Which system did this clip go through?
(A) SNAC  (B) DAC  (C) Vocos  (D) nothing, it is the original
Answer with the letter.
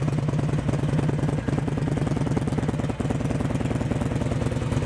D